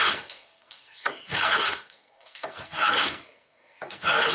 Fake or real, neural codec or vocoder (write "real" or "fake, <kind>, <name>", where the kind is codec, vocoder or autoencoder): fake, codec, SNAC